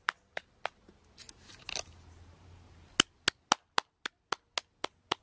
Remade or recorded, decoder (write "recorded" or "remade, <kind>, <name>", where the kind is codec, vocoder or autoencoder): recorded